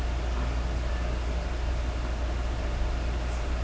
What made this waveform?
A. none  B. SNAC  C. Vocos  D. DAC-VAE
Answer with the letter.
A